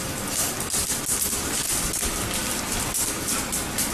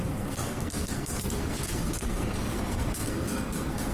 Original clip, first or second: first